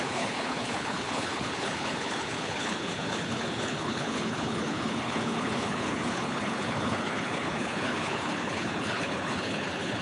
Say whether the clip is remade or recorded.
remade